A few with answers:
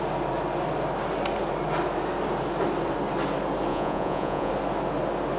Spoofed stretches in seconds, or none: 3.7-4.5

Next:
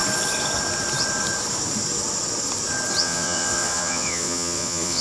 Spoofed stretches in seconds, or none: 3.0-5.0

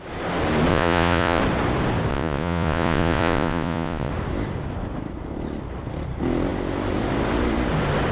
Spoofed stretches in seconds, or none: 0.7-1.4; 2.1-4.1

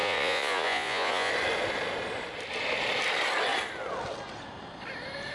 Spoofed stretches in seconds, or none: 0.0-1.3

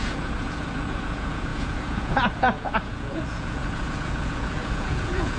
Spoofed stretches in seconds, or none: 0.0-5.4

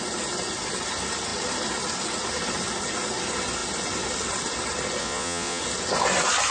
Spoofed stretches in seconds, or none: 5.0-5.6

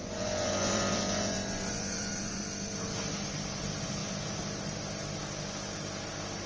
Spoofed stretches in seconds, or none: 0.0-2.4

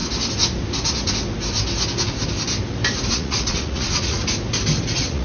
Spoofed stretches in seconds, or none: 3.1-4.2; 4.8-5.2